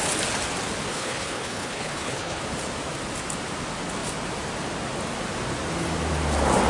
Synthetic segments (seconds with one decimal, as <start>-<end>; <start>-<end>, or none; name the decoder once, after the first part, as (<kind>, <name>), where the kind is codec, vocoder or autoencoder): 0.9-2.4 (codec, HILCodec)